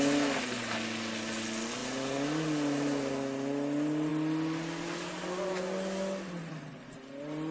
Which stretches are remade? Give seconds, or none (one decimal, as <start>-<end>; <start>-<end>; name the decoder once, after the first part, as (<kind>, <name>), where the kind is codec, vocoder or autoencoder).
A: none